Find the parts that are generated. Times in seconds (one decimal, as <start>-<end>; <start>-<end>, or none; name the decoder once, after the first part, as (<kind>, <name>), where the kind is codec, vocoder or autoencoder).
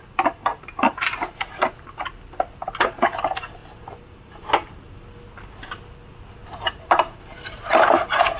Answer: 0.5-2.1 (vocoder, BigVGAN v2); 2.6-3.1; 3.6-4.9; 6.4-7.6